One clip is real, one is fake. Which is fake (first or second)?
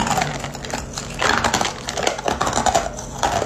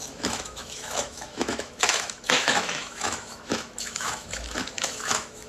second